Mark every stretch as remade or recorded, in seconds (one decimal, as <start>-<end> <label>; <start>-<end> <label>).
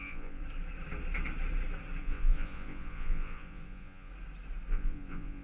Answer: 0.0-0.4 remade; 0.4-2.0 recorded; 2.0-4.1 remade; 4.1-4.7 recorded; 4.7-5.4 remade